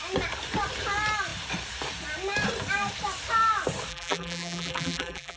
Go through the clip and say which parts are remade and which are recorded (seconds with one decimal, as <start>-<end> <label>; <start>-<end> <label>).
0.0-3.9 recorded; 3.9-5.4 remade